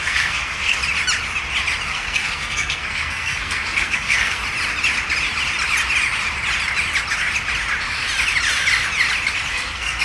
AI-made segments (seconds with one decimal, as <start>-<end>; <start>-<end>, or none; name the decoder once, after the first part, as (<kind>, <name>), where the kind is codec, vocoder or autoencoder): 0.0-0.8 (codec, SNAC); 1.9-4.4; 9.5-10.0